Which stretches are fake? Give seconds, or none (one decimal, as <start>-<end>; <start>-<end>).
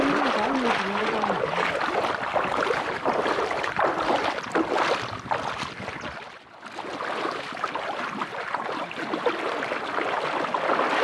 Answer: 1.0-1.7; 2.5-3.8; 8.3-9.2